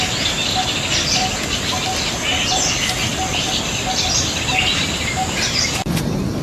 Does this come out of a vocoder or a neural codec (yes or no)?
no